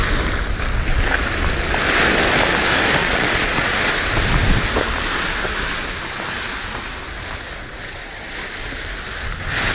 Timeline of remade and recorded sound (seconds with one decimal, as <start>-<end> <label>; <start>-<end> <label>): 0.0-3.0 recorded; 3.0-3.8 remade; 3.8-7.6 recorded; 7.6-8.5 remade; 8.5-9.7 recorded